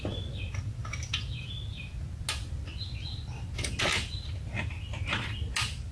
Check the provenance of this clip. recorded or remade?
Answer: recorded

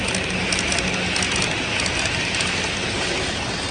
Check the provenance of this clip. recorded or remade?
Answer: recorded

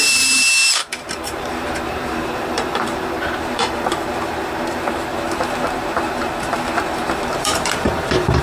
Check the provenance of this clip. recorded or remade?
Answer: remade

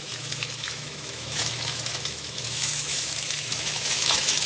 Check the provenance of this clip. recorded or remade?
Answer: remade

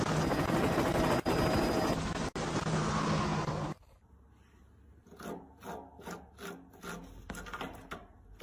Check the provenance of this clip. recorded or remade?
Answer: recorded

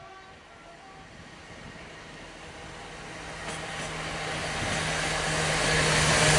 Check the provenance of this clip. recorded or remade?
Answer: recorded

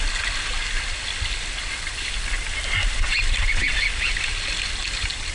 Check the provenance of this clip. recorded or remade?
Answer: recorded